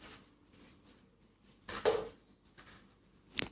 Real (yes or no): no